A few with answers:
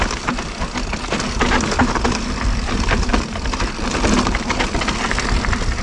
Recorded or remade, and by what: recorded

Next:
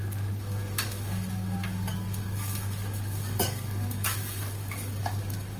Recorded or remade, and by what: remade, codec, DAC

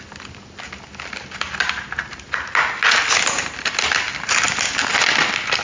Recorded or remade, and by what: recorded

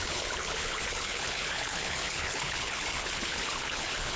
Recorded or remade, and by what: remade, codec, HILCodec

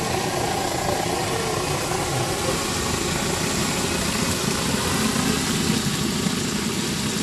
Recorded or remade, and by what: recorded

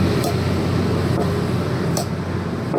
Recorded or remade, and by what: recorded